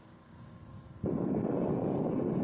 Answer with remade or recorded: recorded